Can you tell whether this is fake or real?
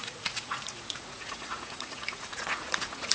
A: fake